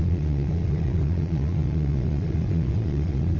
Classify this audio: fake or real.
fake